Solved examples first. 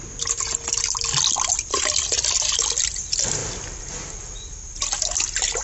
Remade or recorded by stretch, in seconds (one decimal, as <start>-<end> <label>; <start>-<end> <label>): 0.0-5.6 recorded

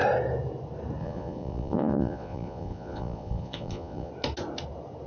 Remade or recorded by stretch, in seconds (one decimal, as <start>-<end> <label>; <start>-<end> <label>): 0.0-1.0 recorded; 1.0-4.1 remade; 4.1-5.1 recorded

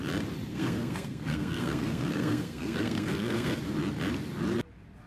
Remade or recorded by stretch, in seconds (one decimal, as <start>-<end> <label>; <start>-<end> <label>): 0.0-0.5 recorded; 0.5-3.6 remade; 3.6-5.1 recorded

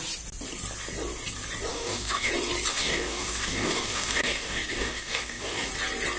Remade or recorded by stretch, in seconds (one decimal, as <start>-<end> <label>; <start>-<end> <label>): 0.0-1.7 recorded; 1.7-2.3 remade; 2.3-2.7 recorded; 2.7-5.7 remade; 5.7-6.2 recorded

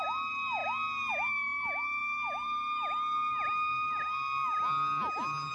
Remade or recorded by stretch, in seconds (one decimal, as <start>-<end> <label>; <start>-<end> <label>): 0.0-5.5 recorded

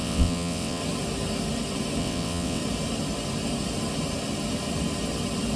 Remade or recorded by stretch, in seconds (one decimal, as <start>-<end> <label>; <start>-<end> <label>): 0.0-0.8 remade; 0.8-2.0 recorded; 2.0-2.6 remade; 2.6-5.6 recorded

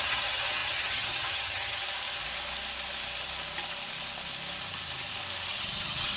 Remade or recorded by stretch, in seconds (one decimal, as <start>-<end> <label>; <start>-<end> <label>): 0.0-1.8 remade; 1.8-5.5 recorded; 5.5-6.2 remade

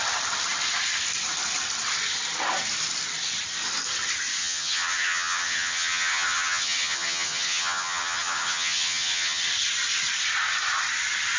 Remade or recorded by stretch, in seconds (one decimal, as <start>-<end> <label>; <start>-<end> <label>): 0.0-4.4 recorded; 4.4-9.4 remade; 9.4-11.4 recorded